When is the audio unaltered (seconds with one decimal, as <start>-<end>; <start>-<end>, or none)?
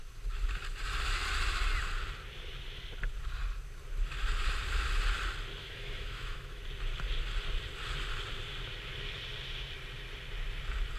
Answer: 0.0-5.6; 6.6-11.0